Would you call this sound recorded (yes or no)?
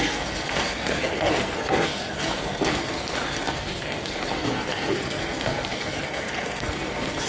no